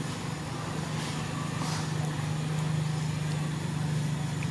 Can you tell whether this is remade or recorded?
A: recorded